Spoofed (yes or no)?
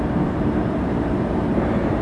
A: yes